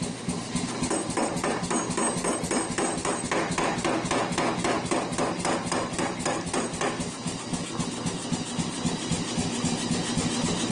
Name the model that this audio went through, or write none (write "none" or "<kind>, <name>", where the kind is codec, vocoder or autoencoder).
none